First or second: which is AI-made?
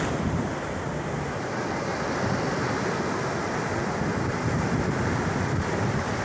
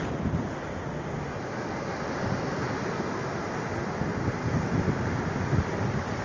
first